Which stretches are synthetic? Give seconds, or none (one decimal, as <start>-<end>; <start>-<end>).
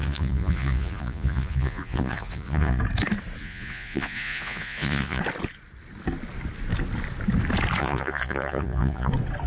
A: 0.0-2.8; 3.4-5.2; 7.8-9.1